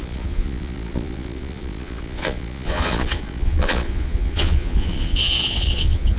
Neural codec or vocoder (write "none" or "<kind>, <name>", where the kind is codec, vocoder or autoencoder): vocoder, Vocos